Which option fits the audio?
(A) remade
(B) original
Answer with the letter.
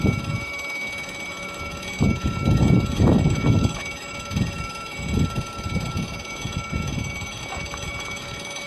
A